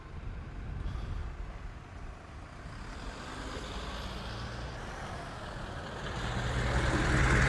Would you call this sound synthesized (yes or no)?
no